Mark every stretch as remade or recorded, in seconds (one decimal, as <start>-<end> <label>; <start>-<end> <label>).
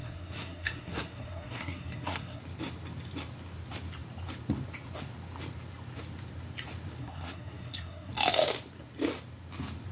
0.0-2.4 remade; 2.4-7.0 recorded; 7.0-8.1 remade; 8.1-9.9 recorded